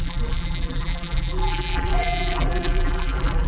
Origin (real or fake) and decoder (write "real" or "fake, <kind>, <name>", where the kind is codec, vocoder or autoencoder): fake, vocoder, BigVGAN v2